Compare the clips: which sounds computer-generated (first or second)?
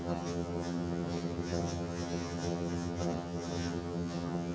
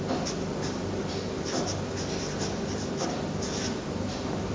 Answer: first